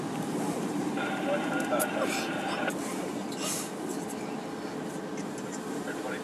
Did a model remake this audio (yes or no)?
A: no